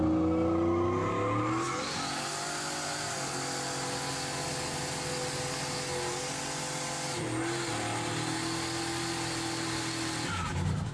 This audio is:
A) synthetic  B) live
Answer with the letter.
B